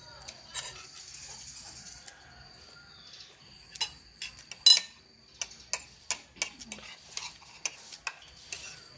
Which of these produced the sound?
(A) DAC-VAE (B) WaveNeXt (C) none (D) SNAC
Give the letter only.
C